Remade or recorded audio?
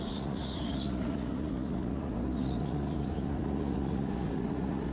remade